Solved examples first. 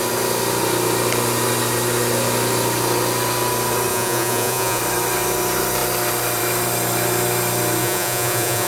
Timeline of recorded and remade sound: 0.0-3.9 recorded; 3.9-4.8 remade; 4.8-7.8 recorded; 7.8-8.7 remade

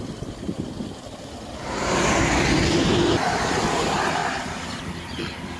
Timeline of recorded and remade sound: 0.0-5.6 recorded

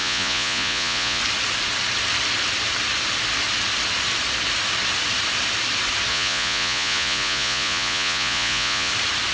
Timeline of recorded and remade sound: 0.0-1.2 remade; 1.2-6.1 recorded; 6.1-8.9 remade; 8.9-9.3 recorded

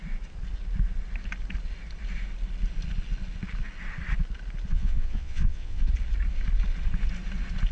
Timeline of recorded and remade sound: 0.0-4.7 recorded; 4.7-5.9 remade; 5.9-7.7 recorded

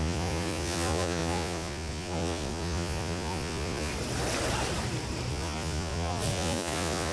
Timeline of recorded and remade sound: 0.0-3.9 remade; 3.9-5.3 recorded; 5.3-7.1 remade